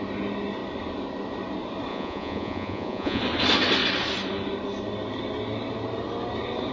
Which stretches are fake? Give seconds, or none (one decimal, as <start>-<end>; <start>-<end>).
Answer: 1.9-3.2